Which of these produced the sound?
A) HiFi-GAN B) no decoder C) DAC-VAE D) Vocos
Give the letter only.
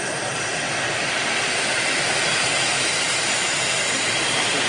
B